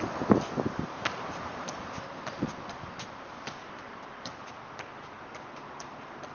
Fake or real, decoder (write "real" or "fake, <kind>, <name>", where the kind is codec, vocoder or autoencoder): real